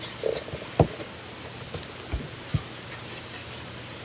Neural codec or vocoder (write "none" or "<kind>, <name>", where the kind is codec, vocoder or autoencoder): none